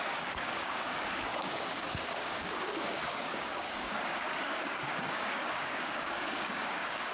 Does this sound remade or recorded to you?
remade